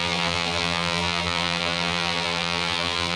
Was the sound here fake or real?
fake